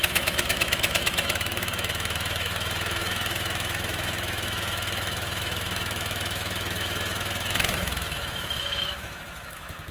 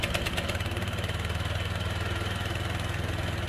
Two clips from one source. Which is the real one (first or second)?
second